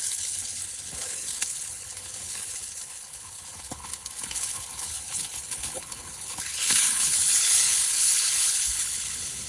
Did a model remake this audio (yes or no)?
yes